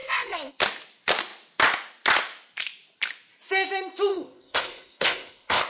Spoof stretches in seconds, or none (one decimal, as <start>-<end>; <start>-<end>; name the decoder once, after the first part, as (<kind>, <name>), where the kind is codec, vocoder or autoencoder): 0.0-0.5 (codec, ZipCodec); 4.1-5.7